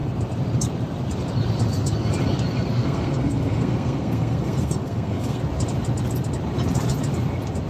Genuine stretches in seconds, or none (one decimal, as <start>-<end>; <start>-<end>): 0.0-2.7; 5.4-7.7

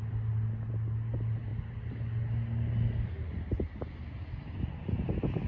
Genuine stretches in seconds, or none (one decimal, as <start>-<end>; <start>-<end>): 0.0-5.5

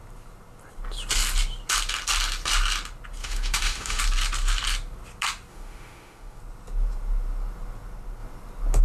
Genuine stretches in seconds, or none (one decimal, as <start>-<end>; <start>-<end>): 0.0-3.2; 4.0-5.5; 6.4-8.8

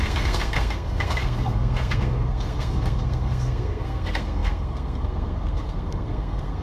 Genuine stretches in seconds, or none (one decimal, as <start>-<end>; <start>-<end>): none